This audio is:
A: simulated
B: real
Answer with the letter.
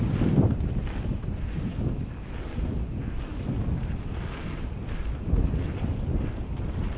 B